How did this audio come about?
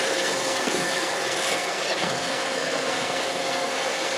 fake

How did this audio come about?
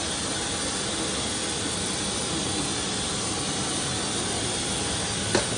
real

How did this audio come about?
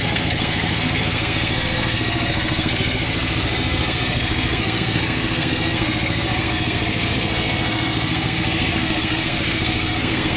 fake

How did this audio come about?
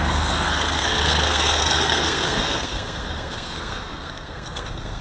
fake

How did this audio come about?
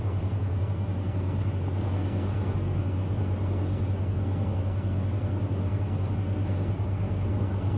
fake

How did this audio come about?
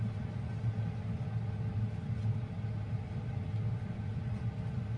real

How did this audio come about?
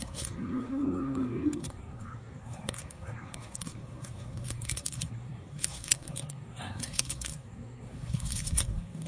fake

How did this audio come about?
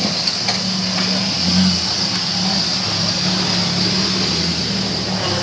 real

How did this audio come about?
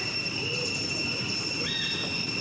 real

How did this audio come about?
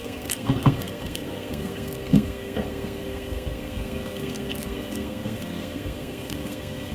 fake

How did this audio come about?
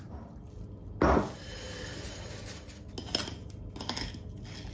real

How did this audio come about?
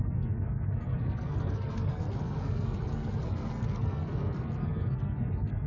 fake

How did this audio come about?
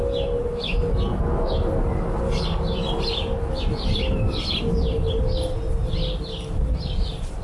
real